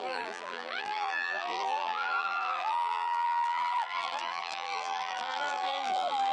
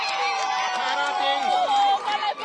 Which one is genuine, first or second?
second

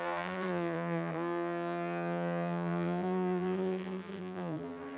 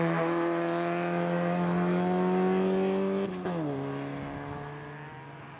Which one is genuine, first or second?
second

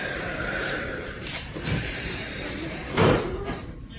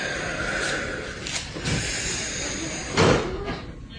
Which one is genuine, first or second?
second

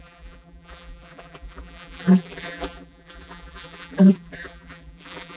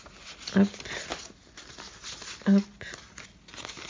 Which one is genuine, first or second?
second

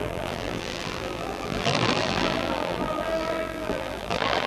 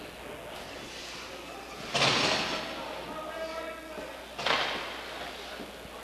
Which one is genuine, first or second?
second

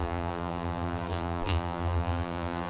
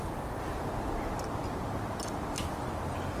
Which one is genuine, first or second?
second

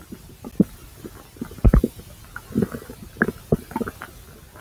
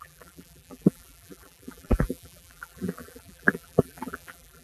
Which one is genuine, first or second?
first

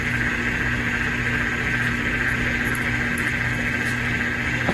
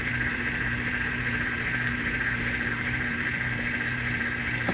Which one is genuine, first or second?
first